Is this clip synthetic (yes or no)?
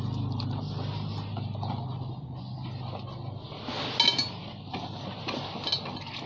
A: no